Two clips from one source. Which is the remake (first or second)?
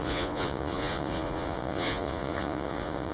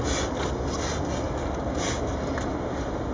first